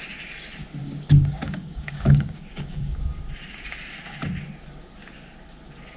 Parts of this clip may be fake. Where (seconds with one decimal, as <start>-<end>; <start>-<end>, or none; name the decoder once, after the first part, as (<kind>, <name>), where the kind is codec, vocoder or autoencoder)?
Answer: 0.8-3.2 (codec, DAC)